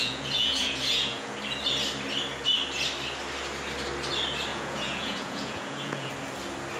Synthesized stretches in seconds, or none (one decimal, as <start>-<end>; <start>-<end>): 0.0-1.4; 4.5-6.1

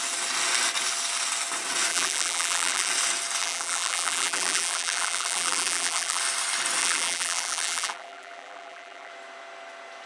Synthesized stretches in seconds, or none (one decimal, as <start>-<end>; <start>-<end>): 1.9-2.9; 3.4-6.2; 6.8-9.1